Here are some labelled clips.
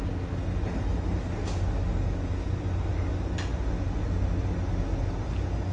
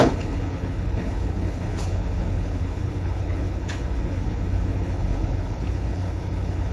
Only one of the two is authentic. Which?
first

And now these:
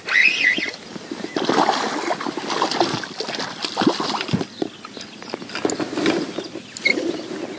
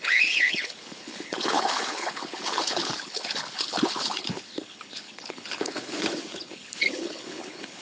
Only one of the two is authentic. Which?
first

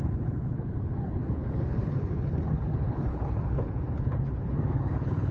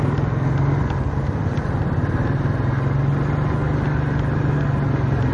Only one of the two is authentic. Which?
second